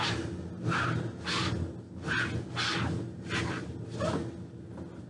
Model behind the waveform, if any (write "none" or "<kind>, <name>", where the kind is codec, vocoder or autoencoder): none